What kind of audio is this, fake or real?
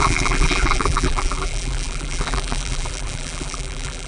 fake